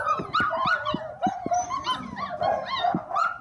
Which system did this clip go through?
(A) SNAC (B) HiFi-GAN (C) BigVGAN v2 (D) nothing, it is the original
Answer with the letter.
D